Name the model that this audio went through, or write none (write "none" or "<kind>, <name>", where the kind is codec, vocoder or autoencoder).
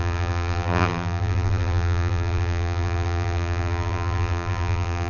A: vocoder, BigVGAN v2